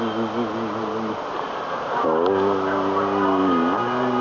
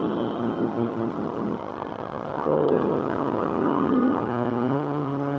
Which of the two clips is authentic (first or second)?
first